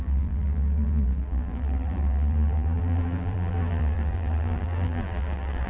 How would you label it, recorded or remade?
remade